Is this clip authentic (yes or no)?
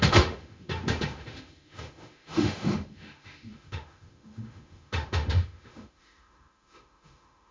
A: no